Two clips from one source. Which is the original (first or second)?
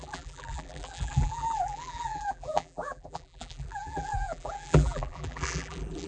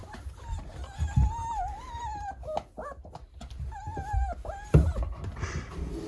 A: second